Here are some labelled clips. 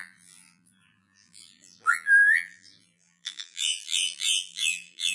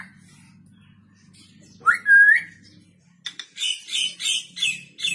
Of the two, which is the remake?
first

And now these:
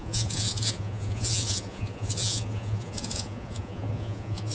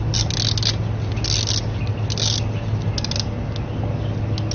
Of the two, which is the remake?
first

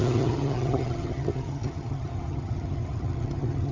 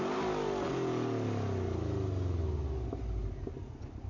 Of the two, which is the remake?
first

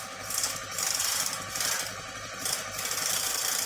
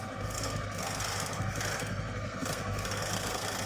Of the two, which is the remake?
second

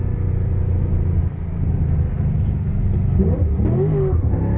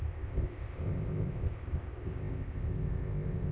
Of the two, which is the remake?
second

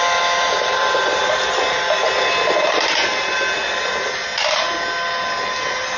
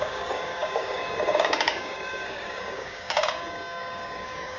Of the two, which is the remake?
second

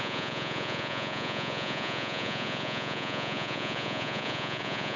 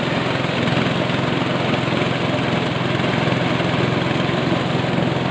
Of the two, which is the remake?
first